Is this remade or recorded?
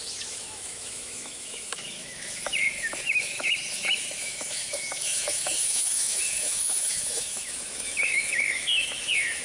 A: remade